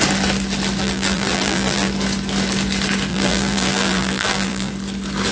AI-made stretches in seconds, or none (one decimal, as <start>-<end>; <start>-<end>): 0.8-1.9; 3.1-4.7